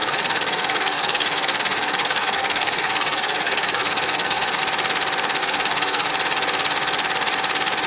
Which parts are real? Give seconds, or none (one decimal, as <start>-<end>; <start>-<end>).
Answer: 4.6-5.4; 6.1-7.9